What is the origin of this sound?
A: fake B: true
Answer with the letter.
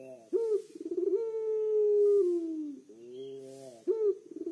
B